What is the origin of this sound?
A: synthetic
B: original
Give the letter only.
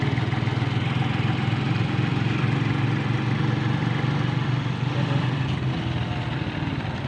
B